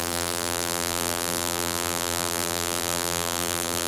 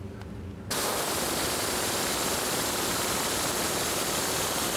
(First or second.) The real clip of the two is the second